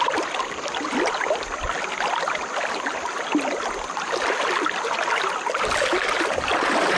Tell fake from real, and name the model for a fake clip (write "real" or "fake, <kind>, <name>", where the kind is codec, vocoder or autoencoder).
real